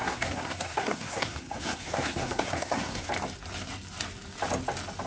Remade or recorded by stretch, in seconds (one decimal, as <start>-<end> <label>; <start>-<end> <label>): 0.0-3.1 remade; 3.1-5.1 recorded